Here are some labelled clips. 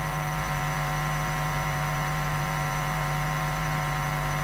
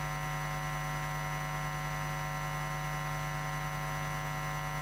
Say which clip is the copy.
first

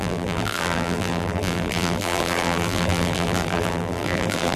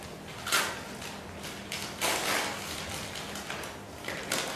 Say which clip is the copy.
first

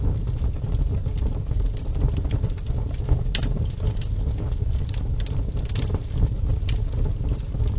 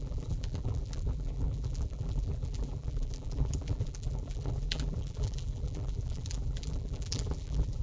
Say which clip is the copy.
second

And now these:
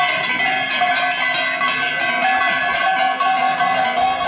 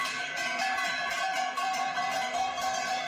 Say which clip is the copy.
second